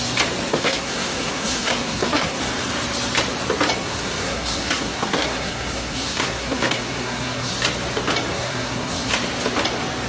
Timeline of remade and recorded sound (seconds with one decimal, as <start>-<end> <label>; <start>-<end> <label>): 0.0-0.5 recorded; 0.5-2.4 remade; 2.4-3.8 recorded; 3.8-7.5 remade; 7.5-8.3 recorded; 8.3-9.1 remade; 9.1-10.1 recorded